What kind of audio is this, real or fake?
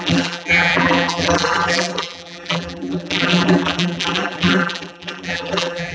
fake